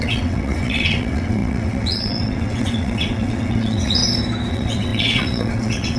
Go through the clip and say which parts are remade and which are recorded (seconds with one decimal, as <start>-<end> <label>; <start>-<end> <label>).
0.0-4.0 remade; 4.0-4.5 recorded; 4.5-6.0 remade